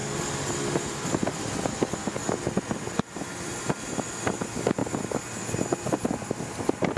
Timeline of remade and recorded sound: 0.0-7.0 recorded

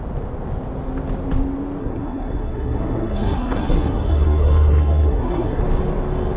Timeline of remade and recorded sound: 0.0-1.8 recorded; 1.8-5.6 remade; 5.6-6.4 recorded

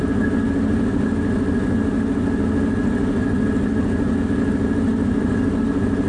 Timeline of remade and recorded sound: 0.0-6.1 recorded

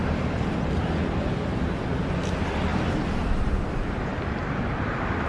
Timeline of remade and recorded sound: 0.0-5.3 recorded

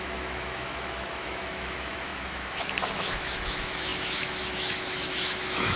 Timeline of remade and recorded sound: 0.0-5.8 remade